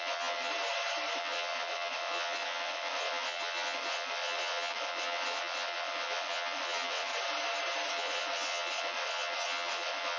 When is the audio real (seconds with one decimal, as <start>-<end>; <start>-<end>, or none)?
0.5-1.2; 7.1-7.9